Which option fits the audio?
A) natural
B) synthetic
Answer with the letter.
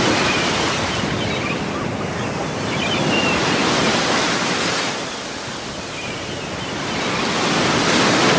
A